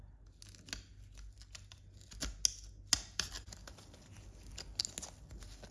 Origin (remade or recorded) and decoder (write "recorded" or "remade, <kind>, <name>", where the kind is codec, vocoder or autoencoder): recorded